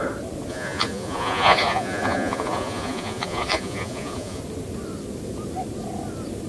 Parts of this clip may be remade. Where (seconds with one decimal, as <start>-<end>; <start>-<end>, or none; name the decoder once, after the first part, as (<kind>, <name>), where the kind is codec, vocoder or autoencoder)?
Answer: 0.5-4.4 (vocoder, Vocos)